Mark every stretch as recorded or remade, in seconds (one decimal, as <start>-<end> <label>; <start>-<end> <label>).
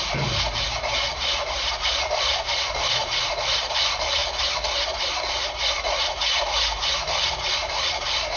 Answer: 0.0-4.2 remade; 4.2-6.6 recorded; 6.6-8.4 remade